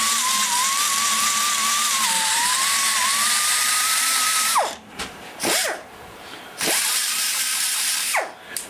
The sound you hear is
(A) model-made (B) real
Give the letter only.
A